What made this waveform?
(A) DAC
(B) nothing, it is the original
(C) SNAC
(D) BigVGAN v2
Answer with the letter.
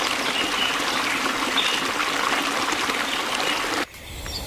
B